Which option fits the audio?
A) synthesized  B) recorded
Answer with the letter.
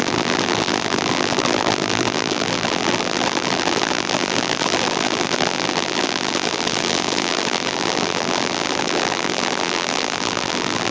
A